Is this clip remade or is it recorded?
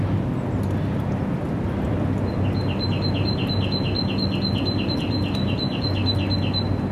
recorded